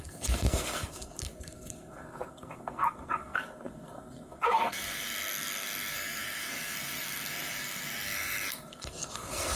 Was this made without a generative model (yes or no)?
no